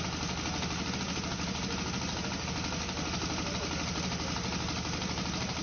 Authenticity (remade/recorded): recorded